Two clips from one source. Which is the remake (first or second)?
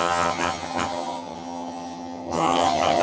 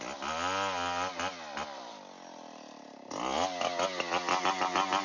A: first